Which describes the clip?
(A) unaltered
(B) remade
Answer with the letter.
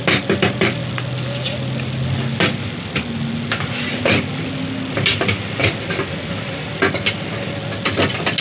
A